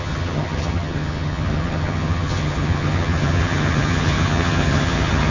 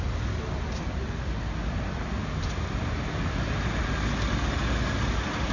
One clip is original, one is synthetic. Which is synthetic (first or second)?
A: first